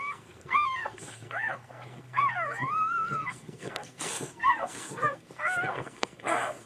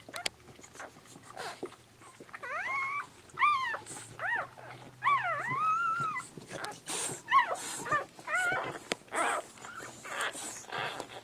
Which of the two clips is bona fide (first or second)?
second